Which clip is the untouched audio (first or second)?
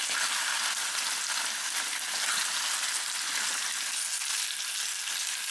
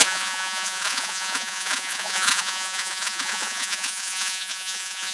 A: first